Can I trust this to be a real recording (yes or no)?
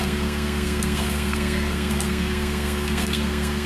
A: no